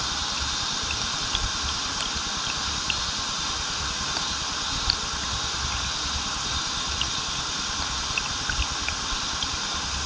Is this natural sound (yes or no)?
yes